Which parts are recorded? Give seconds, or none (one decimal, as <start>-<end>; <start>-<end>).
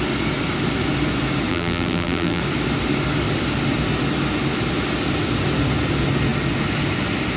0.0-1.5; 2.4-7.4